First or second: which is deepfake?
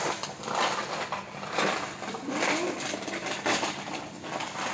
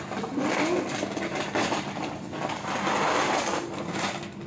first